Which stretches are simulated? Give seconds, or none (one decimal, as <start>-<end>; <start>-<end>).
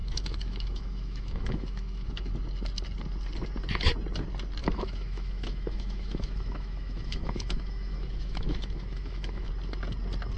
0.0-2.3; 4.6-9.5